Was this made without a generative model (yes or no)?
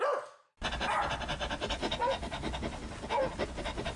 yes